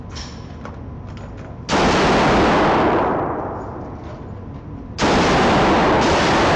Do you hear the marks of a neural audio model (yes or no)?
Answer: no